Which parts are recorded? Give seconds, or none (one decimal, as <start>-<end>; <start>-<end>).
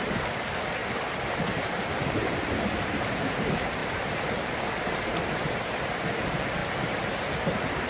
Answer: 0.8-1.7; 6.6-7.4